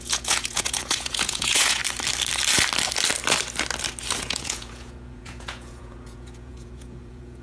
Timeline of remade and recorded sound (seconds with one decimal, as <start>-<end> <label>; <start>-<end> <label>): 0.0-1.8 remade; 1.8-4.2 recorded; 4.2-7.4 remade